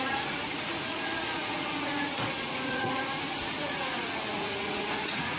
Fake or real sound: fake